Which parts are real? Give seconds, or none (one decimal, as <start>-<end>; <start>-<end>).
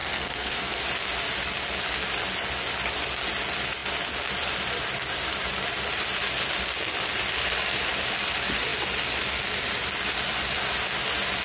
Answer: 0.8-11.4